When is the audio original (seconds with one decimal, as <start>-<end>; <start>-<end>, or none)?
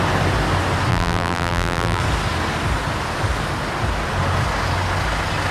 0.0-0.9; 2.0-5.5